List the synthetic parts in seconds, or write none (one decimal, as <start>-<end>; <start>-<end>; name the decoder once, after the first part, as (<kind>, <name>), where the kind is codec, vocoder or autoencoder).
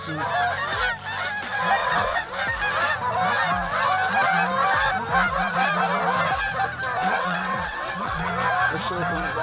1.8-2.3 (vocoder, WaveNeXt); 7.0-8.3